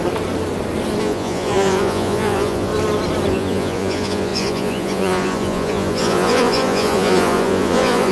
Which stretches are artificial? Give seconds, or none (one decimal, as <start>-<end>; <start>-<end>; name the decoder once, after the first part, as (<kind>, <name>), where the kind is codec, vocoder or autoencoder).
1.0-2.7 (vocoder, Vocos); 3.3-8.1